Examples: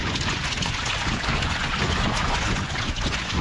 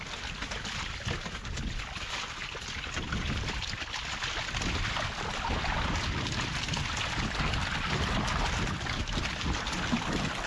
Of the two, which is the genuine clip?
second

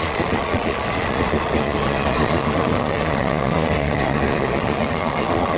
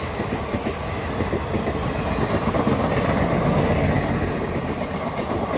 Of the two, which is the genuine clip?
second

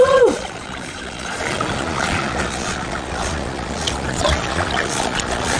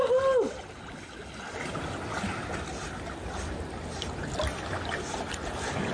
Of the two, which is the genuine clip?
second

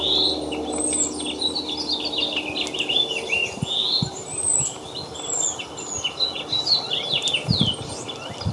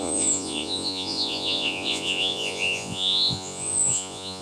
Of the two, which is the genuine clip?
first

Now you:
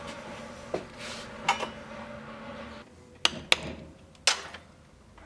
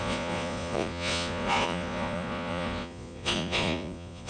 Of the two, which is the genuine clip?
first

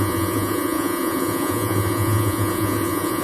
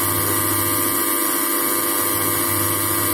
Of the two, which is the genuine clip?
second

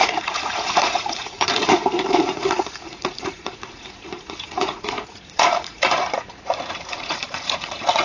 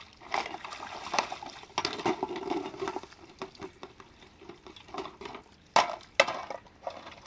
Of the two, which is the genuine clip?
second